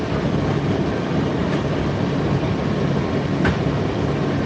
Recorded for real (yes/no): yes